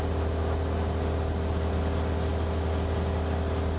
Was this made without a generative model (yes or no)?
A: yes